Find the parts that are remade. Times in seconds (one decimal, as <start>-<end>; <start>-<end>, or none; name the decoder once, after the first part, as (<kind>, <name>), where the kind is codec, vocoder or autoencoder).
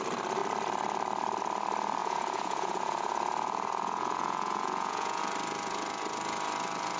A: 2.0-5.2 (vocoder, Vocos)